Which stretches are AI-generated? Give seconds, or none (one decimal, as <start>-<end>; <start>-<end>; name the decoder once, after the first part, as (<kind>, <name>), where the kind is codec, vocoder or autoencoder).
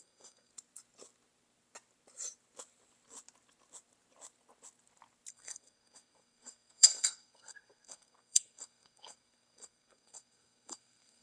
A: 0.0-0.5 (codec, SNAC); 5.3-11.2